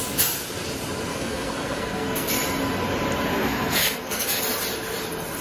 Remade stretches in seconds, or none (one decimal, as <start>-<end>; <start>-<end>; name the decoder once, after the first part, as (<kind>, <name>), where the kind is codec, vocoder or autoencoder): 1.1-2.3 (codec, SNAC); 3.3-4.4